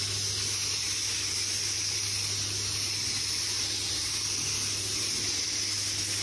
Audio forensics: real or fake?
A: real